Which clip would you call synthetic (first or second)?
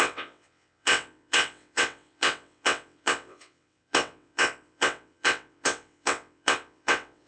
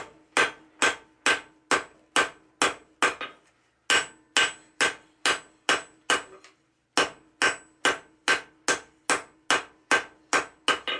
first